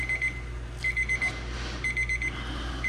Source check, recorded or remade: recorded